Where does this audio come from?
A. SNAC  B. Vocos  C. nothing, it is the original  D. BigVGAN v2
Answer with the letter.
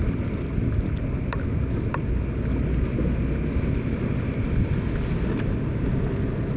C